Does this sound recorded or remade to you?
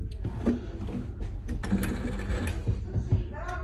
recorded